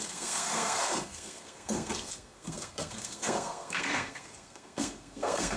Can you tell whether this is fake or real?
fake